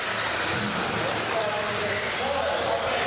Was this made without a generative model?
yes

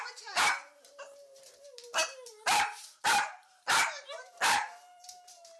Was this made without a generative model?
no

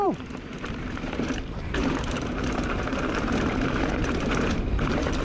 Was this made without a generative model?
no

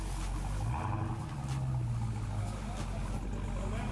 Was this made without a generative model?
yes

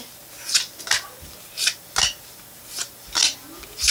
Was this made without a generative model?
yes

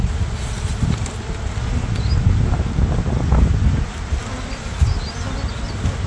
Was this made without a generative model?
yes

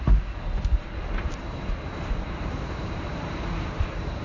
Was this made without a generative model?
no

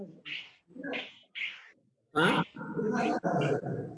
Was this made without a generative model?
no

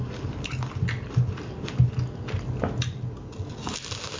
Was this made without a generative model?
yes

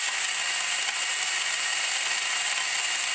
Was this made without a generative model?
yes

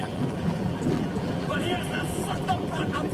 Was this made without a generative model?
no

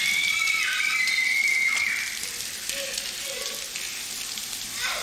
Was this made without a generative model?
no